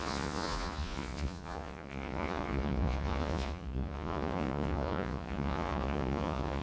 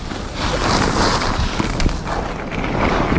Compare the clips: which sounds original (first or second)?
second